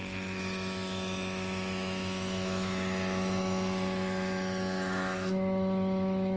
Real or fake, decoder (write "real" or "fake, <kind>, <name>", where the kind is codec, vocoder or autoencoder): fake, autoencoder, DAC-VAE